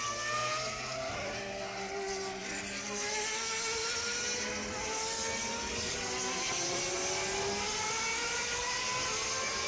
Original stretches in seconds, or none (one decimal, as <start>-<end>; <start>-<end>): 0.0-9.7